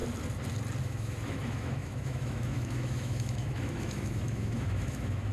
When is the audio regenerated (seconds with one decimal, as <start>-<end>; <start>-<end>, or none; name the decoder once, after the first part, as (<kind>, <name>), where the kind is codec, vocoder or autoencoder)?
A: 0.8-5.3 (autoencoder, DAC-VAE)